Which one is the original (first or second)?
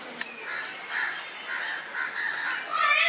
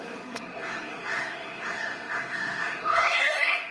first